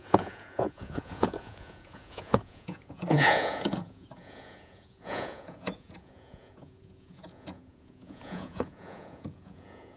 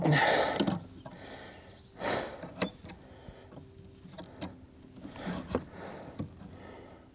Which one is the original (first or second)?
second